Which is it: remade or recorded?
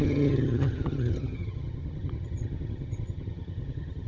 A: remade